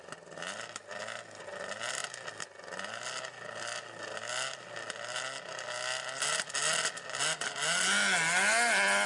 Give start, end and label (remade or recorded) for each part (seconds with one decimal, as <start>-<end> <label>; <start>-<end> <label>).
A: 0.0-9.1 recorded